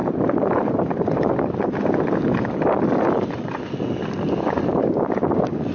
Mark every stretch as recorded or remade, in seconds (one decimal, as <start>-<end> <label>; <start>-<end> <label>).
0.0-1.3 remade; 1.3-5.7 recorded